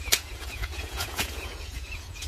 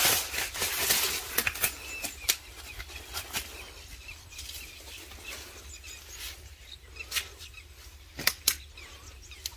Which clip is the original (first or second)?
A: second